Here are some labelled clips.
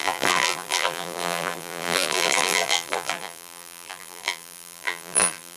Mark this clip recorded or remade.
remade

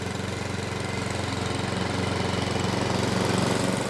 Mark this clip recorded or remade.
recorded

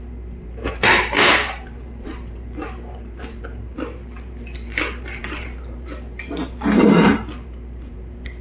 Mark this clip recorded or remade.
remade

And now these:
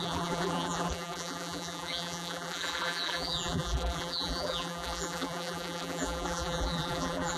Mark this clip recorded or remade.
remade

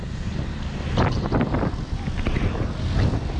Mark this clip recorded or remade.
recorded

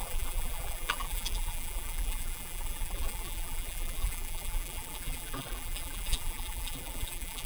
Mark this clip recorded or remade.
remade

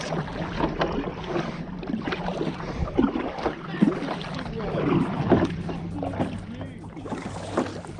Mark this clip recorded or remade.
recorded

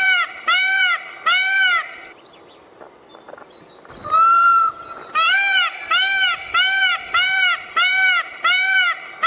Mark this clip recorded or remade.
remade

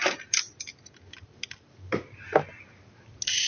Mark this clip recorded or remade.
recorded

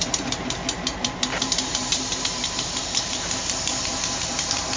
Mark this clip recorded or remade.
remade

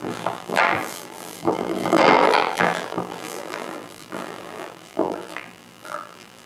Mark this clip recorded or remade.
remade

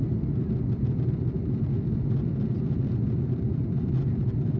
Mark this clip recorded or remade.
remade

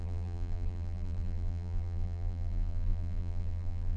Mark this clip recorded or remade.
remade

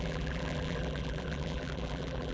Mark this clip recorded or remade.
remade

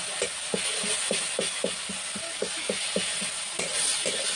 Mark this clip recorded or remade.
recorded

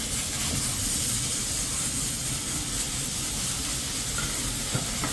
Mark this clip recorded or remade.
recorded